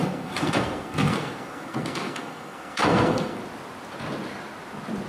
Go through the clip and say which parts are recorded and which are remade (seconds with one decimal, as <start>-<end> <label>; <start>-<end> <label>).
0.0-3.4 remade; 3.4-5.1 recorded